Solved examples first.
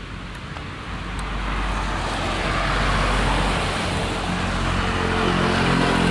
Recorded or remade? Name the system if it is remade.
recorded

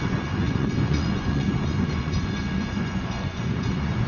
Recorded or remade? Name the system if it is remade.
remade, vocoder, Vocos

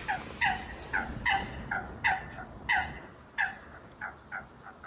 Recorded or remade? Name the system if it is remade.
recorded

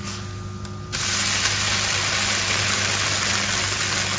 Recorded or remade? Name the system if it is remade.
recorded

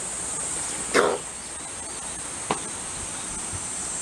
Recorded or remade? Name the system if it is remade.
recorded